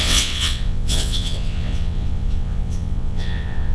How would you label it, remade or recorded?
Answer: remade